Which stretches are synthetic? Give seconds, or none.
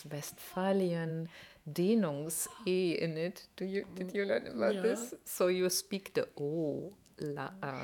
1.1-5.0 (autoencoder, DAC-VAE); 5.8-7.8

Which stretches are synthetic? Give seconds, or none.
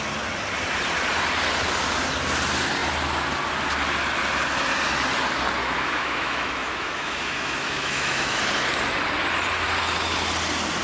5.6-8.4 (autoencoder, DAC-VAE)